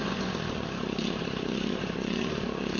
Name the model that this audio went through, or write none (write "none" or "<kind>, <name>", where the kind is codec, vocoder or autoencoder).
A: vocoder, Vocos